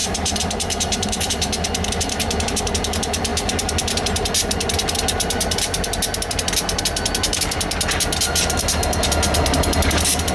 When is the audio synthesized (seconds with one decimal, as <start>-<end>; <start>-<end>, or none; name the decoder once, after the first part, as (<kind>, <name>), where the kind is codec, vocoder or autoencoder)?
0.0-2.6 (vocoder, BigVGAN v2)